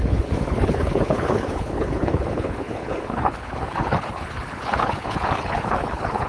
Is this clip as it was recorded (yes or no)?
no